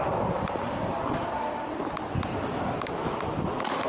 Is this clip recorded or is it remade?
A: recorded